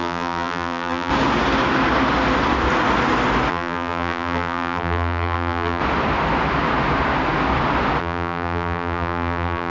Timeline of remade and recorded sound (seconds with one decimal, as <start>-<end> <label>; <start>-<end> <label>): 0.0-1.1 remade; 1.1-3.5 recorded; 3.5-5.8 remade; 5.8-8.0 recorded; 8.0-9.7 remade